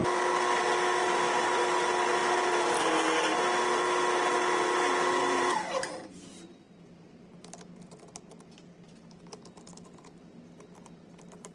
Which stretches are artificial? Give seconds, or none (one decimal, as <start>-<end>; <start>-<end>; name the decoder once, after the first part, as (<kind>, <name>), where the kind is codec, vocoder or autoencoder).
1.0-1.7 (vocoder, BigVGAN v2); 2.2-2.9; 5.2-5.9